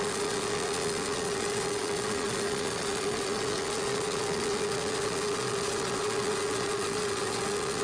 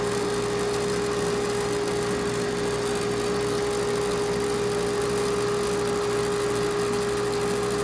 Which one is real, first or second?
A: second